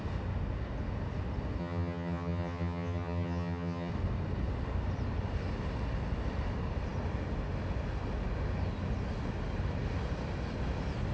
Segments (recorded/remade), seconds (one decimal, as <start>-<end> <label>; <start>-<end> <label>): 0.0-1.6 recorded; 1.6-3.9 remade; 3.9-11.1 recorded